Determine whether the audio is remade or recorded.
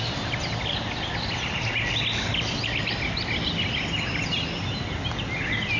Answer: recorded